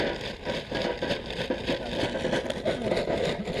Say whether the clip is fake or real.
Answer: real